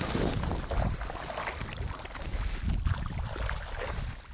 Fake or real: real